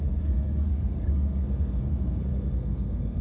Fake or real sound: fake